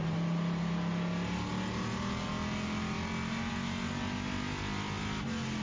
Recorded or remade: recorded